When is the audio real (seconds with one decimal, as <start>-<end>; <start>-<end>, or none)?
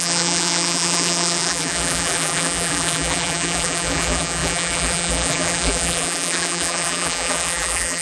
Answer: none